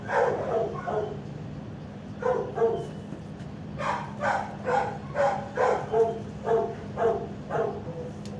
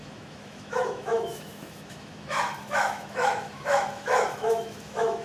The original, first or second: first